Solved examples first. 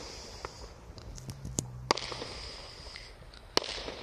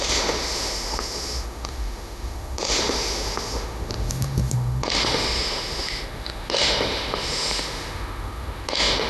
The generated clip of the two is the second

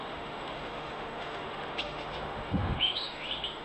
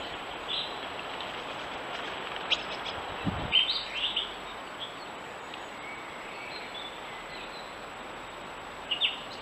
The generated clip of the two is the first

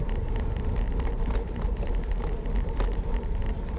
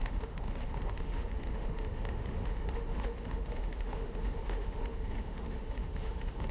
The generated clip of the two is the second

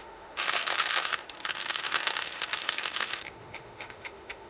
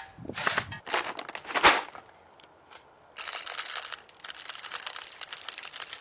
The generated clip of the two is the first